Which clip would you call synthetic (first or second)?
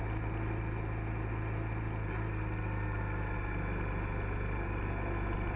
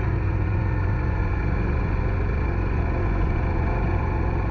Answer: second